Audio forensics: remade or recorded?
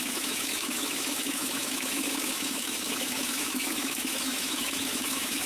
remade